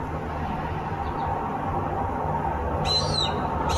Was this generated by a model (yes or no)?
no